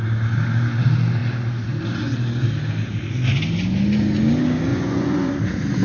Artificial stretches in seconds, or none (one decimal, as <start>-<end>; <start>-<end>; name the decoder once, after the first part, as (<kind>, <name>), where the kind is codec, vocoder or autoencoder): 4.7-5.3 (vocoder, Vocos)

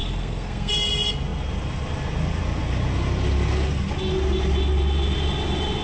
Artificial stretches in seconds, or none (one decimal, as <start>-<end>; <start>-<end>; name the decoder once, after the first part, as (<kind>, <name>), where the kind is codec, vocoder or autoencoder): 0.0-0.7 (codec, SNAC)

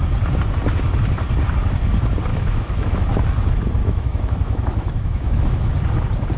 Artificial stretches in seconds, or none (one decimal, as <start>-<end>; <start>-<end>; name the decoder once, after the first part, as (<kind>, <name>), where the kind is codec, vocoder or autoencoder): 2.3-2.9 (autoencoder, DAC-VAE); 3.8-5.7

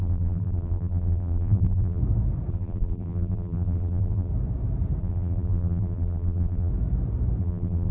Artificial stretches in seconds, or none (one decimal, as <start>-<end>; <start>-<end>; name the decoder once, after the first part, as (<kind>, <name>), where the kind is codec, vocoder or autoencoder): 0.0-2.0 (vocoder, BigVGAN v2); 2.5-4.3; 5.0-6.7; 7.4-7.9

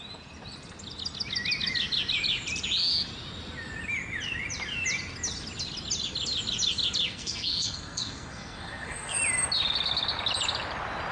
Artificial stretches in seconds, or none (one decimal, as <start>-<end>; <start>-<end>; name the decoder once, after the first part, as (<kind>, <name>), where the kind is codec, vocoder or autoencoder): 7.1-9.2 (codec, SNAC)

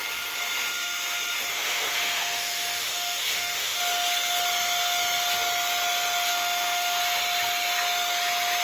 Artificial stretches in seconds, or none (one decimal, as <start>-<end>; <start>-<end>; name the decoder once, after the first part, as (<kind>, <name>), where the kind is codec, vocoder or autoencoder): 1.5-3.8 (autoencoder, DAC-VAE); 6.3-7.0

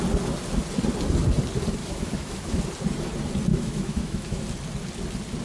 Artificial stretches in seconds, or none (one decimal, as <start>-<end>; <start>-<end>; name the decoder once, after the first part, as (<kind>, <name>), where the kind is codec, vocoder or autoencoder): 1.8-2.6 (autoencoder, DAC-VAE); 3.5-4.4